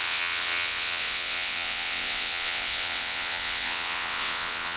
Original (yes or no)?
no